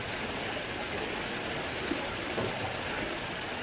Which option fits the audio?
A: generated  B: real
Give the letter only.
B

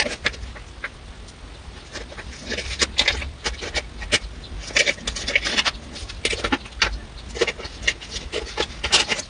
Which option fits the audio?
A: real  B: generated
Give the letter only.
A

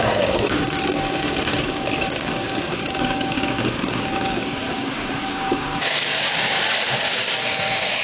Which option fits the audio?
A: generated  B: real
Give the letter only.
A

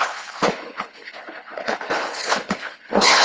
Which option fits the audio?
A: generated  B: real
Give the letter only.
A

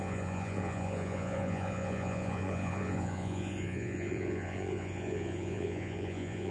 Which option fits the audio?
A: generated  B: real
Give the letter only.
A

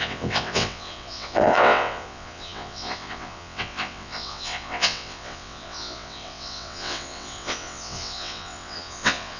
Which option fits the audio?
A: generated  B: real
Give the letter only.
A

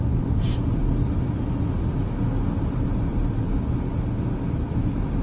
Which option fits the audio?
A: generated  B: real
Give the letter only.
B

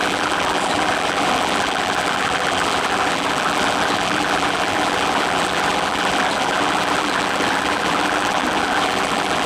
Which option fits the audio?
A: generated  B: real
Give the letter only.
A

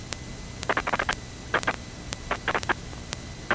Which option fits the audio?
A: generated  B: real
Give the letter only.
B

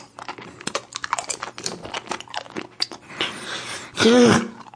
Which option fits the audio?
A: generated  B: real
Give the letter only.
B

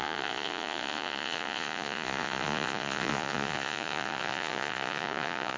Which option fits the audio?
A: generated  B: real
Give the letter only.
A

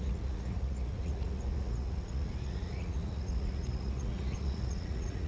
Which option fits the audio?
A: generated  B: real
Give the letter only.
A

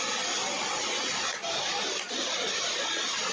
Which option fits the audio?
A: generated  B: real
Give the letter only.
B